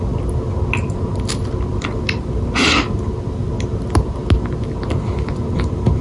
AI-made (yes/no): no